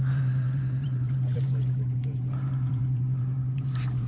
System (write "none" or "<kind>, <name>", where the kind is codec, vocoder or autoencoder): vocoder, BigVGAN v2